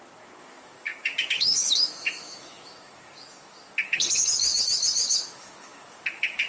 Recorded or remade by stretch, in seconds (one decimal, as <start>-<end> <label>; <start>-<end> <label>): 0.0-6.5 remade